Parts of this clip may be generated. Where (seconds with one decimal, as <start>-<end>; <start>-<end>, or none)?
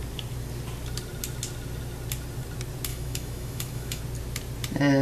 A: 2.9-4.0